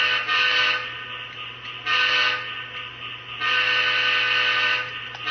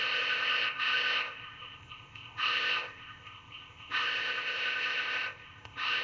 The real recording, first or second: first